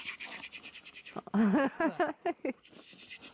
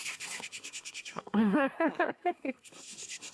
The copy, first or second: second